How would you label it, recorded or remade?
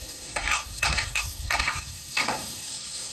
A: remade